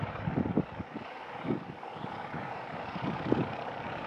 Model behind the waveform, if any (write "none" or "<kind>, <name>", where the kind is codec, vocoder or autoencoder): codec, DAC